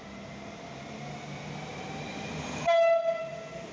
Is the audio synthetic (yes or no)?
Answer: no